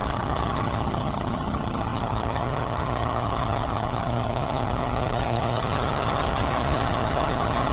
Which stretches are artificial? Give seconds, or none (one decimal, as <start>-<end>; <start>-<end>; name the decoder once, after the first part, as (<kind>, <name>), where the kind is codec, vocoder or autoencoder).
0.0-7.7 (vocoder, HiFi-GAN)